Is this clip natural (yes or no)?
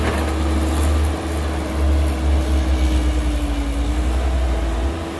yes